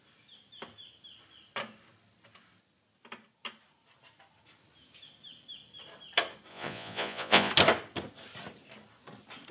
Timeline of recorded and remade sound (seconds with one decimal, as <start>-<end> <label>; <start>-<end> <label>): 0.0-6.5 recorded; 6.5-7.5 remade; 7.5-9.5 recorded